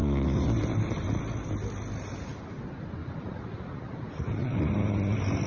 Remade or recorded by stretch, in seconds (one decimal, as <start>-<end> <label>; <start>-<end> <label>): 0.0-3.0 recorded; 3.0-4.6 remade; 4.6-5.5 recorded